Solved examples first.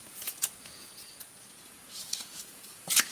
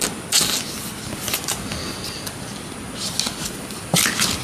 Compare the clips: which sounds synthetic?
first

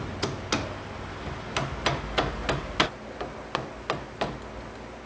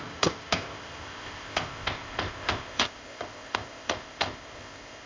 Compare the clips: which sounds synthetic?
second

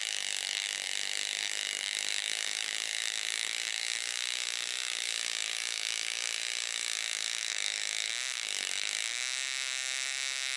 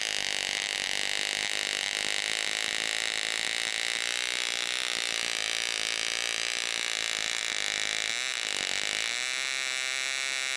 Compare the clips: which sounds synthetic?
first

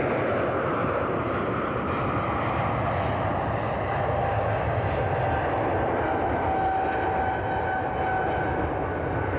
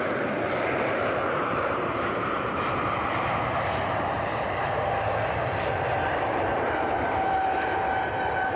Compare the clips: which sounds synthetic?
second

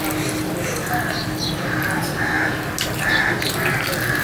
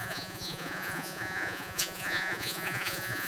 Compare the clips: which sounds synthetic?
second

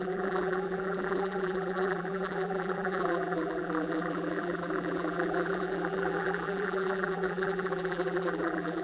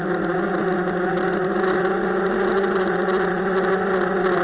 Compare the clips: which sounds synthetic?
first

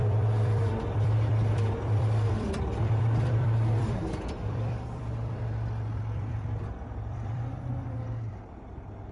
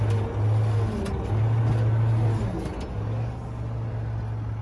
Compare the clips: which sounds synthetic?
first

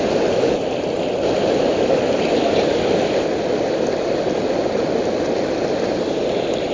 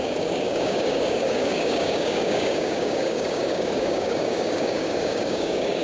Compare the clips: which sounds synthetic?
second